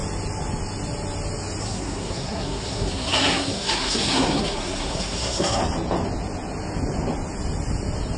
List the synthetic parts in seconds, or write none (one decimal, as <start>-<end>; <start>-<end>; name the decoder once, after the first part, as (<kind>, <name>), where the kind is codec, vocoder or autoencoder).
1.6-5.6 (codec, SNAC)